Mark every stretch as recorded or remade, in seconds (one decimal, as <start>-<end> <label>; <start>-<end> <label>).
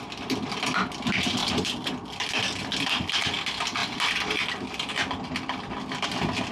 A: 0.0-1.4 recorded; 1.4-2.3 remade; 2.3-6.5 recorded